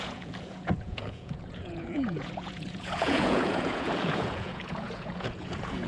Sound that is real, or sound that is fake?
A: fake